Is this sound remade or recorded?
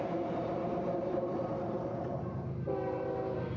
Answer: remade